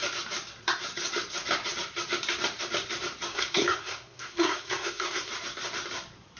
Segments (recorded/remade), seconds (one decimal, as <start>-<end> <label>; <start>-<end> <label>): 0.0-3.3 recorded; 3.3-5.3 remade; 5.3-6.4 recorded